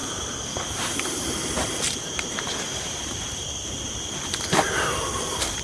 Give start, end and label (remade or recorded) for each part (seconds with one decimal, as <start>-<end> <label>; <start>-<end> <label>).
0.0-5.6 recorded